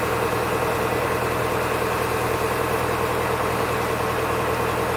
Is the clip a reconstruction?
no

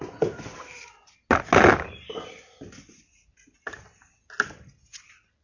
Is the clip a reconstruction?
no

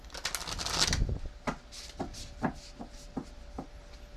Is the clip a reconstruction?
no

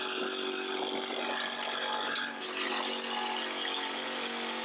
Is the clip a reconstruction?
no